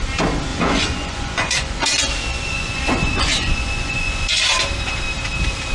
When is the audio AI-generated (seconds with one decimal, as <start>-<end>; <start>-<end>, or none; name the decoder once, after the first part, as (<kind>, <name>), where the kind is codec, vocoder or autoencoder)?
0.5-1.9 (vocoder, Vocos); 2.3-4.4